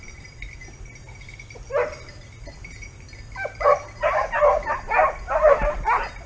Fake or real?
real